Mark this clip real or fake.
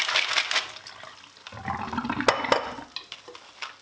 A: real